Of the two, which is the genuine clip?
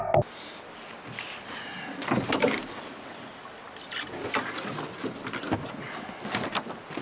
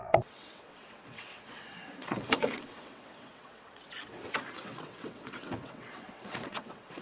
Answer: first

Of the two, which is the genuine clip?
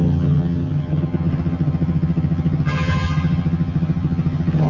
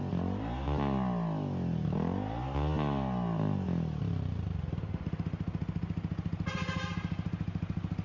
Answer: second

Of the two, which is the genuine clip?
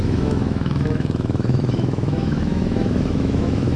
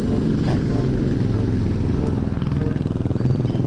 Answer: second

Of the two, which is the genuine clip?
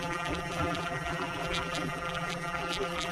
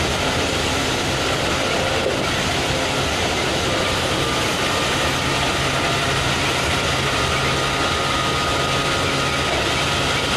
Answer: second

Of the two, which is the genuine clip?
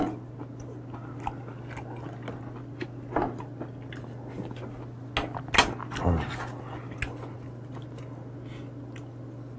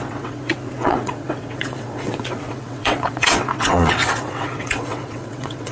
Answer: first